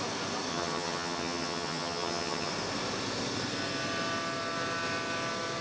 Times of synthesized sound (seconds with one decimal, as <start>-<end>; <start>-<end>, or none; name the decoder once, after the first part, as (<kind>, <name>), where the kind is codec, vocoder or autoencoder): 0.5-2.5 (vocoder, HiFi-GAN)